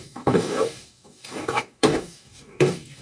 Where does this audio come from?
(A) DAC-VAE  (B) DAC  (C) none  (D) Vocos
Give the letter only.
B